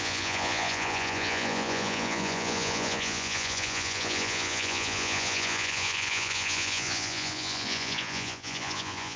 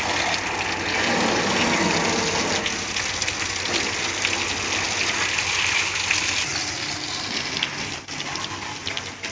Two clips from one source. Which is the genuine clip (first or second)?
second